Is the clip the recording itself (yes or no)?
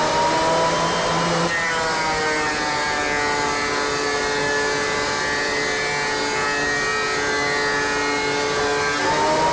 yes